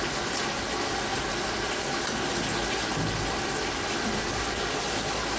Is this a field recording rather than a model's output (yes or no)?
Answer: yes